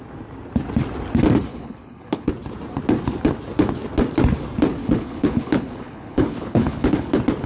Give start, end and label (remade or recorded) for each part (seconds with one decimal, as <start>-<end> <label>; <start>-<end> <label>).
0.0-1.5 recorded; 1.5-2.3 remade; 2.3-4.8 recorded; 4.8-7.1 remade; 7.1-7.5 recorded

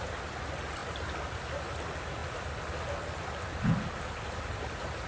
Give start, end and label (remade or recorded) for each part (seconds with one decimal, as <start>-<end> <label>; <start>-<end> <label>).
0.0-5.1 recorded

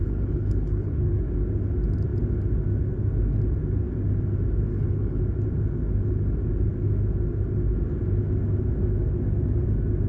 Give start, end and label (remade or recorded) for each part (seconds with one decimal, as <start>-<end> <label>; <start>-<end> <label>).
0.0-1.2 remade; 1.2-4.7 recorded; 4.7-5.2 remade; 5.2-10.1 recorded

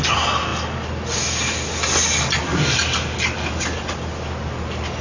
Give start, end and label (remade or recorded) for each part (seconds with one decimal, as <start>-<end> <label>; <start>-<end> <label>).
0.0-5.0 recorded

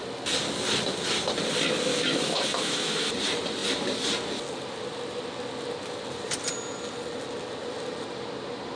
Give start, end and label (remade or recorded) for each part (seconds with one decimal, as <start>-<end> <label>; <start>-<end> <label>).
0.0-1.9 recorded; 1.9-3.1 remade; 3.1-8.8 recorded